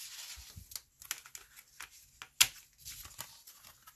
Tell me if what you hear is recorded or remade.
recorded